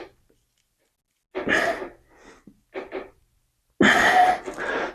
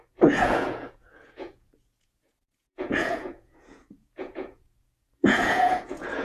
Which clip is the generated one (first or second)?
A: second